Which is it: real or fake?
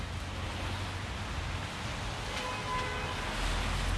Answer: real